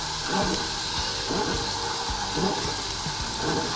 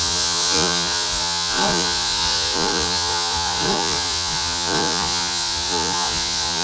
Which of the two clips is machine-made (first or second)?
second